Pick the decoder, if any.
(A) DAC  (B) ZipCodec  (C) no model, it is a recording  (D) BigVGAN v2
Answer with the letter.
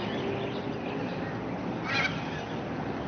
C